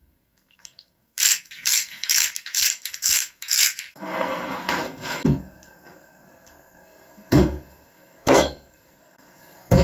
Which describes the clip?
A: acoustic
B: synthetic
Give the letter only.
B